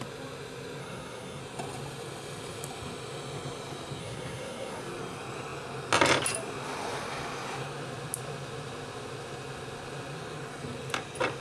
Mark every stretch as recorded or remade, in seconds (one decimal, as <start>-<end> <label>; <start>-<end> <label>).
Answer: 0.0-0.8 recorded; 0.8-1.4 remade; 1.4-4.0 recorded; 4.0-4.8 remade; 4.8-11.4 recorded